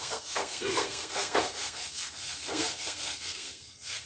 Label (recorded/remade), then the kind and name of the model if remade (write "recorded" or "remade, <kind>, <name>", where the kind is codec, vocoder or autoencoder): remade, codec, SNAC